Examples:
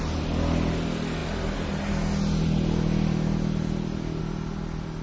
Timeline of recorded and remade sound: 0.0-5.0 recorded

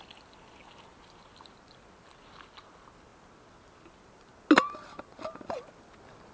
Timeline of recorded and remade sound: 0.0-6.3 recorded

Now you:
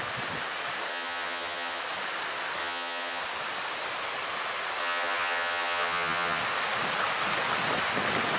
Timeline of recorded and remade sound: 0.0-0.9 recorded; 0.9-1.8 remade; 1.8-2.6 recorded; 2.6-3.2 remade; 3.2-4.8 recorded; 4.8-6.4 remade; 6.4-8.4 recorded

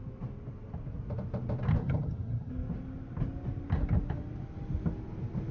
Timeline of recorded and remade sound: 0.0-1.8 recorded; 1.8-2.5 remade; 2.5-5.5 recorded

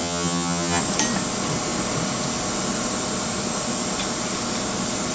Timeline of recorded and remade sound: 0.0-0.8 remade; 0.8-5.1 recorded

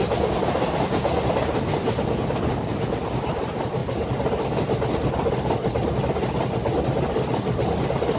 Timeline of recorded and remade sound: 0.0-8.2 recorded